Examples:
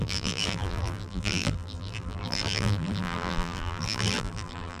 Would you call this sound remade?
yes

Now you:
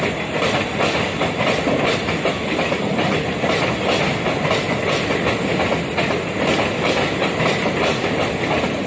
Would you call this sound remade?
no